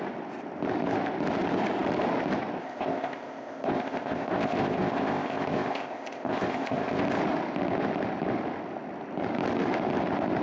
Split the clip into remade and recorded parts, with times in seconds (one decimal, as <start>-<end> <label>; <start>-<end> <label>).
0.0-2.6 recorded; 2.6-7.0 remade; 7.0-10.4 recorded